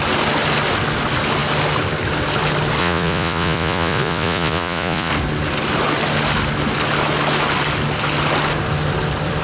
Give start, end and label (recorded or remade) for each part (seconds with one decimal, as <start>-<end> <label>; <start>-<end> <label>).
0.0-2.8 recorded; 2.8-5.1 remade; 5.1-9.4 recorded